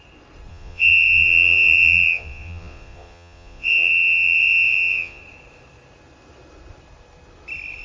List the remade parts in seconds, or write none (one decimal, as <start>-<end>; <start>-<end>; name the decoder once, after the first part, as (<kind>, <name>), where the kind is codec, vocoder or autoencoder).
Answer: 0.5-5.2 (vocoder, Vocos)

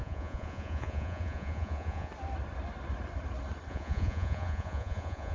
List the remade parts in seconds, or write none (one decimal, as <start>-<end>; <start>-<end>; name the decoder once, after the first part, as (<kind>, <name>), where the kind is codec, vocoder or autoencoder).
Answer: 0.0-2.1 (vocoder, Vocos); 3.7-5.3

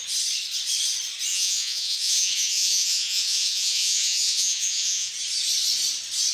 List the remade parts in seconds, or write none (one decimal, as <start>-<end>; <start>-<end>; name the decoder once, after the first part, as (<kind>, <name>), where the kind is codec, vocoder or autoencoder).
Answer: 1.3-5.1 (vocoder, Vocos)